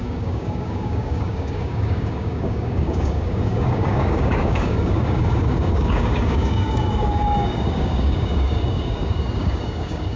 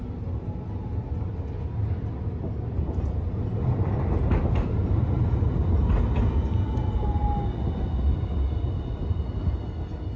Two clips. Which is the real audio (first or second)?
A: second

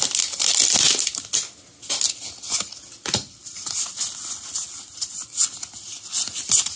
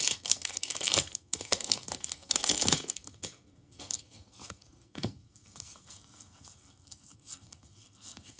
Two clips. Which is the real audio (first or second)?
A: first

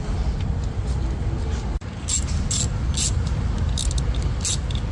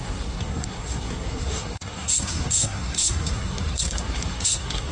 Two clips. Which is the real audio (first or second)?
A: first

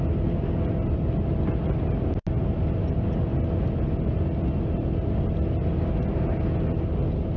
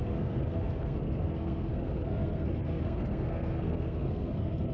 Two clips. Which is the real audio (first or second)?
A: first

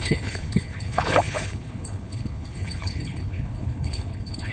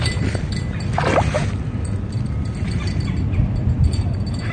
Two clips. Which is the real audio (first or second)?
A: second